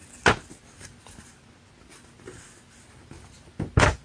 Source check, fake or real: real